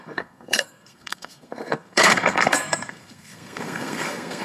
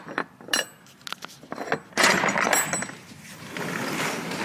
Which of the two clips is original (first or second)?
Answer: second